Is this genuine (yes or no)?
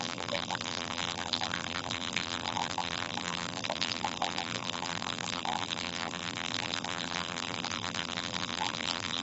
no